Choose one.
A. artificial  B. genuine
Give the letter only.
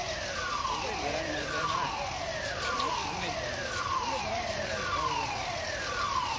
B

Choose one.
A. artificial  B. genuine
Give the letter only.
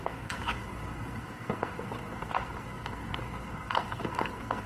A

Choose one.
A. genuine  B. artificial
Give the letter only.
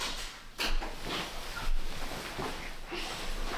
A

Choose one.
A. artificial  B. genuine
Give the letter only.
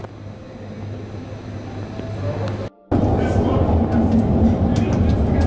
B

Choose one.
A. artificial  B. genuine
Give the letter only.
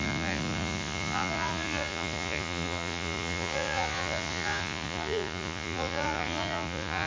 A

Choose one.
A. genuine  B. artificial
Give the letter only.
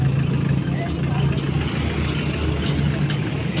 A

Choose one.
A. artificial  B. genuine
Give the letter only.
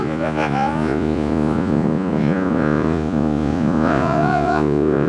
A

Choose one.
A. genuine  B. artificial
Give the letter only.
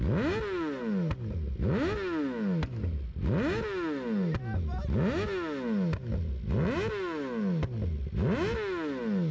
A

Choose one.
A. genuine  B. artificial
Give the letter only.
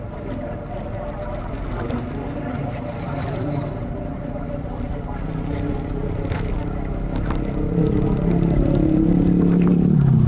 A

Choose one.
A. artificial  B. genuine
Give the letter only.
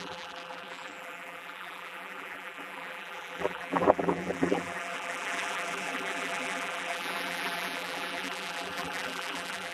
A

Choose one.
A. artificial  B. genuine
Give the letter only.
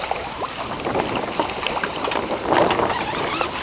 B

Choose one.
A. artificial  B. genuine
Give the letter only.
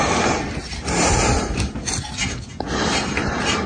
B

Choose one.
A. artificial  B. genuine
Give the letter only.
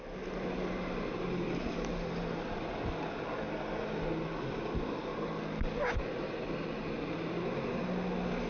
B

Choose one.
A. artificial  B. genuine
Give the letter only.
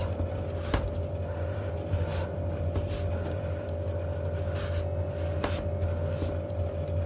B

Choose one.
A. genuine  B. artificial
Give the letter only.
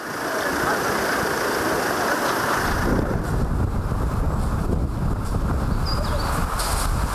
A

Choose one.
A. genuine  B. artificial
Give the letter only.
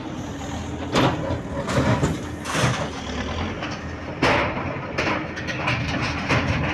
A